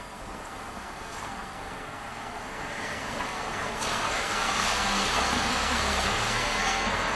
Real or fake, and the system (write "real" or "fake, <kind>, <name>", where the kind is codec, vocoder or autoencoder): fake, codec, SNAC